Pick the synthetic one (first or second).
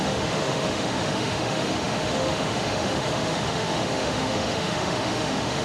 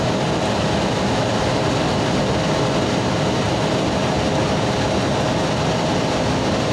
first